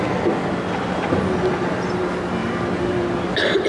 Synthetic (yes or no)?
no